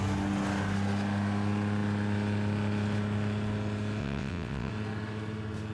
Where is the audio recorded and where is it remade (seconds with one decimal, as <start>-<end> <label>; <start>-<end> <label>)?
0.0-4.0 recorded; 4.0-4.7 remade; 4.7-5.7 recorded